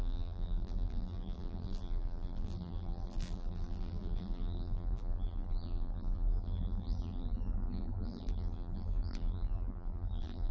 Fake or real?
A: fake